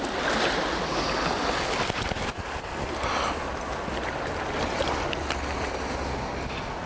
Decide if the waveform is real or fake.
real